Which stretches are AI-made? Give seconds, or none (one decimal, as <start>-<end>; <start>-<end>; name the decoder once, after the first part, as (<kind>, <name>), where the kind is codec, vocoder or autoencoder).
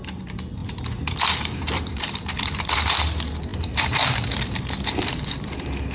0.6-2.9 (vocoder, BigVGAN v2); 3.5-5.0